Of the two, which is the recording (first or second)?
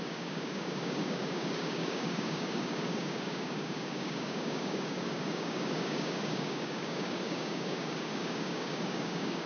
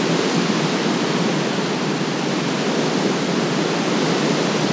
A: second